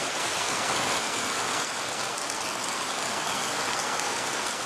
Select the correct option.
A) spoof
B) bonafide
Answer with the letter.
A